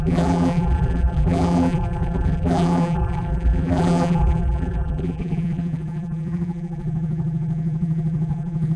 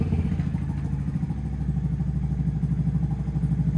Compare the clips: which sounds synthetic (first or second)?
first